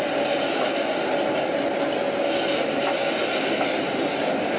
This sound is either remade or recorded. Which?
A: recorded